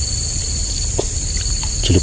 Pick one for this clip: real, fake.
real